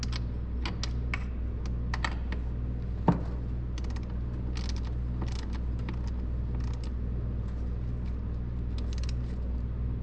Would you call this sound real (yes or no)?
yes